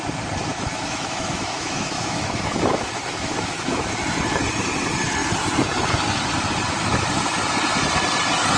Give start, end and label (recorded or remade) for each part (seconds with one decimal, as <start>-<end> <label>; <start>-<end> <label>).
0.0-0.5 recorded; 0.5-3.9 remade; 3.9-8.6 recorded

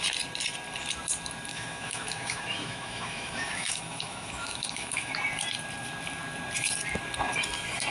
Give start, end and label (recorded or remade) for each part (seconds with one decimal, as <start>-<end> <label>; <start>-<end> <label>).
0.0-1.5 recorded; 1.5-5.1 remade; 5.1-7.9 recorded

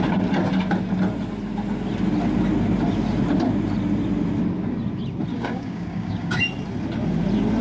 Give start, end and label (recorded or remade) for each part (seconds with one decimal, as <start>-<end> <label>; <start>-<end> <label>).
0.0-5.3 recorded; 5.3-6.4 remade; 6.4-7.6 recorded

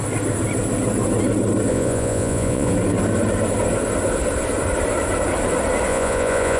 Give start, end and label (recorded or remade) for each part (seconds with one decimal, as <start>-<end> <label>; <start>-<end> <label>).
0.0-1.7 recorded; 1.7-2.7 remade; 2.7-5.9 recorded; 5.9-6.6 remade

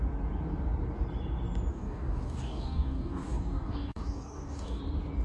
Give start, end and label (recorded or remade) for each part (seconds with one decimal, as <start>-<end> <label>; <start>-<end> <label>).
0.0-1.7 recorded; 1.7-4.8 remade; 4.8-5.2 recorded

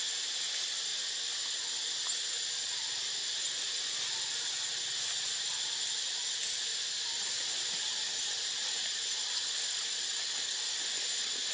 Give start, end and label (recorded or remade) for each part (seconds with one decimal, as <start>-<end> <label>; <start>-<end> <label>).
0.0-11.5 recorded

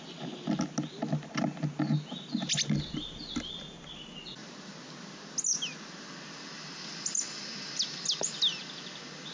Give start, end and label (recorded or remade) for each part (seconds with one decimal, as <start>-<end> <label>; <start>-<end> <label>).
0.0-9.3 recorded

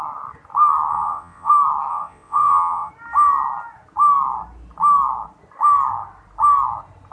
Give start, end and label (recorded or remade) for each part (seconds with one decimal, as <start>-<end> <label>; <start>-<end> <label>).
0.0-0.9 recorded; 0.9-1.5 remade; 1.5-1.9 recorded; 1.9-2.9 remade; 2.9-7.1 recorded